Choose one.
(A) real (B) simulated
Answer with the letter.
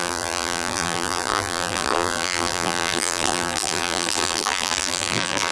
B